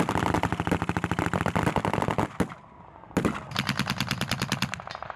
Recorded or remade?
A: recorded